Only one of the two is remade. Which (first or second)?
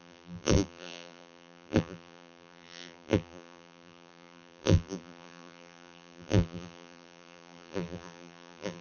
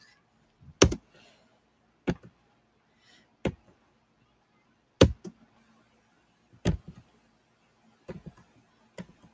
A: first